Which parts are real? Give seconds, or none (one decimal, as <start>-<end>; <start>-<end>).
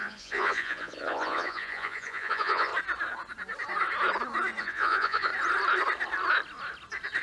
2.7-4.6; 5.3-7.2